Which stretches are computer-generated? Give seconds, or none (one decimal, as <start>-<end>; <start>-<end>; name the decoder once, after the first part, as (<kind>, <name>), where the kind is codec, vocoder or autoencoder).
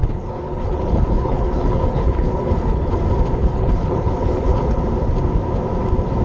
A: 0.0-3.0 (codec, HILCodec); 3.4-4.8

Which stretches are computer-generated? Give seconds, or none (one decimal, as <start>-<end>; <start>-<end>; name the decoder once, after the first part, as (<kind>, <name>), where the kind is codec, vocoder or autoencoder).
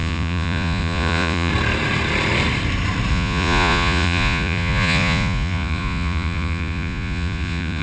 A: 0.0-1.5 (vocoder, Vocos); 3.1-7.8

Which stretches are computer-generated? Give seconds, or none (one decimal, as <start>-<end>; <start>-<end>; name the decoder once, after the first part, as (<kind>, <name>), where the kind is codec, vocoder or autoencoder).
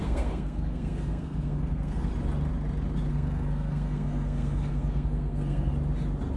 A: 0.0-2.1 (codec, SNAC); 3.1-5.7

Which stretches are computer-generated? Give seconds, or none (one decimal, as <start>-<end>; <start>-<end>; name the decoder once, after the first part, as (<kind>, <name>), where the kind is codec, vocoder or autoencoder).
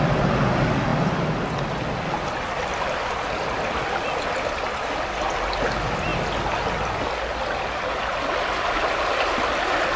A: 0.9-3.7 (vocoder, BigVGAN v2)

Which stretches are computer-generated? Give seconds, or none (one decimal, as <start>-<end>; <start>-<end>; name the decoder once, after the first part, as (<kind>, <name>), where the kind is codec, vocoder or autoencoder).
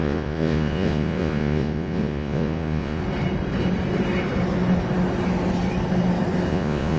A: 0.0-3.0 (vocoder, Vocos); 6.5-7.0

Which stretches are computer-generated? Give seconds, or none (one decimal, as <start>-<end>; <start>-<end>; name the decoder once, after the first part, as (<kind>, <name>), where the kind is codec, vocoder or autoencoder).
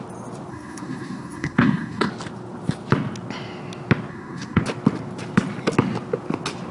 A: 0.5-2.1 (codec, SNAC); 4.1-4.6